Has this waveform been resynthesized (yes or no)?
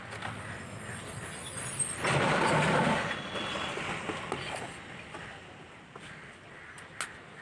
no